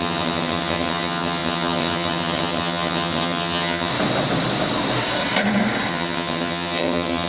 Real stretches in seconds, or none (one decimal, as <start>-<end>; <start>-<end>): 3.9-5.9